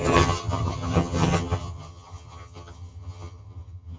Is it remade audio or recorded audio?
remade